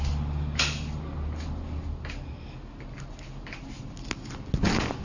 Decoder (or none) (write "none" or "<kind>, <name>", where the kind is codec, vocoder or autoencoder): none